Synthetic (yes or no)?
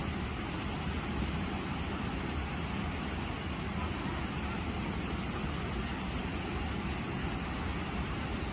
no